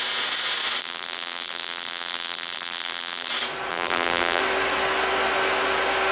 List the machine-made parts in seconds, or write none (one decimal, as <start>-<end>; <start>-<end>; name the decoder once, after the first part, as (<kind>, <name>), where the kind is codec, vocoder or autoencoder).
0.8-3.3 (vocoder, BigVGAN v2); 3.7-4.4